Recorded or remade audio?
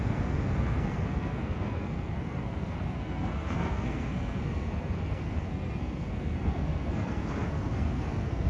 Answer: remade